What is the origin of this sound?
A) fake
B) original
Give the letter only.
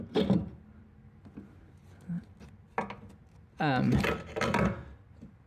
B